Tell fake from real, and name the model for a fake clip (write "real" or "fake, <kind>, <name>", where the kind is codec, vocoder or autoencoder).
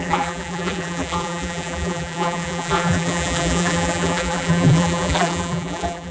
fake, vocoder, BigVGAN v2